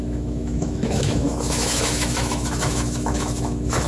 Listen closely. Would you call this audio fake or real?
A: fake